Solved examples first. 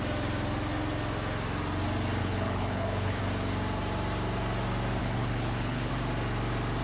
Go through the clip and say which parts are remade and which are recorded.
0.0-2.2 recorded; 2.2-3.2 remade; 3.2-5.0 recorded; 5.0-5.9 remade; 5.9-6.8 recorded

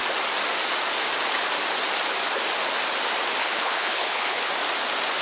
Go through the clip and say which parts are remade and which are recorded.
0.0-3.4 recorded; 3.4-4.5 remade; 4.5-5.2 recorded

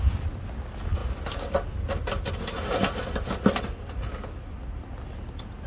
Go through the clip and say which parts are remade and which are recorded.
0.0-5.7 recorded

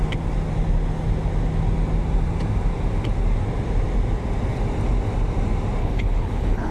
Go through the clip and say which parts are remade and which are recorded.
0.0-5.8 recorded; 5.8-6.7 remade

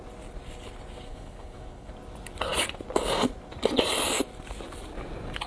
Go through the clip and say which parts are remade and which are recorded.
0.0-1.1 recorded; 1.1-1.9 remade; 1.9-5.5 recorded

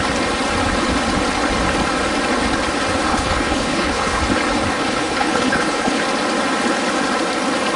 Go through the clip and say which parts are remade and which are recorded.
0.0-3.1 recorded; 3.1-4.2 remade; 4.2-4.7 recorded; 4.7-6.0 remade; 6.0-7.8 recorded